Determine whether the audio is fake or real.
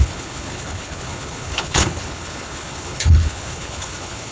fake